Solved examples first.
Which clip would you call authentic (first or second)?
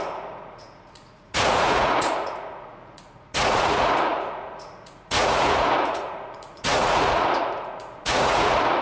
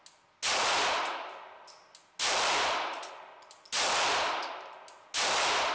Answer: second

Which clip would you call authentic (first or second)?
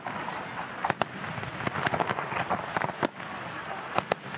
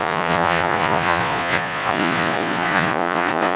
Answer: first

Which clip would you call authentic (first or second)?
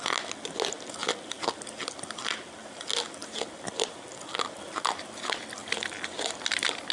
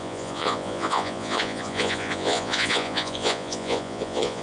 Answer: first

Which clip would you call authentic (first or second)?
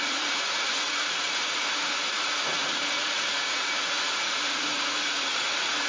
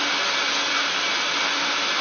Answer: second